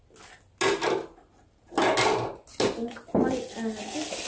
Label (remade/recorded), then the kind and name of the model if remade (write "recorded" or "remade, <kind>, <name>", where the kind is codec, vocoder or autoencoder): recorded